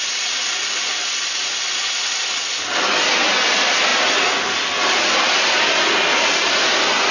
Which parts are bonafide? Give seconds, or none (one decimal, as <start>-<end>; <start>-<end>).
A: 0.0-7.1

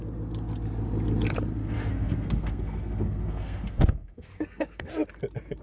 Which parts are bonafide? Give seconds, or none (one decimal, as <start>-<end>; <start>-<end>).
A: 0.0-1.5; 4.9-5.6

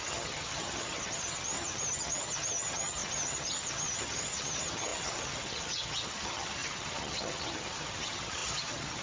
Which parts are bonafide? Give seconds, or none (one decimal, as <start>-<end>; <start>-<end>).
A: none